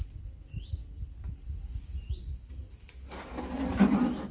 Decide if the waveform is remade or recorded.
recorded